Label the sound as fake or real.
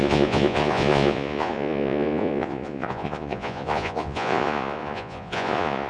fake